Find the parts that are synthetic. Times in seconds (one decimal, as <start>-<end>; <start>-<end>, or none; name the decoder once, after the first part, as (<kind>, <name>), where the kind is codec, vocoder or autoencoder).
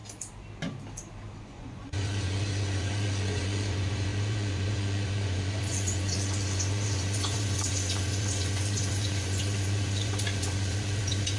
1.4-11.4 (vocoder, Vocos)